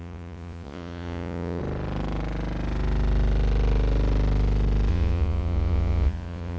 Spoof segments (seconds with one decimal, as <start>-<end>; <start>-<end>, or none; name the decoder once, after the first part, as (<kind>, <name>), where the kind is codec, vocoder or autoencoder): 0.0-1.6 (vocoder, Vocos); 4.9-6.6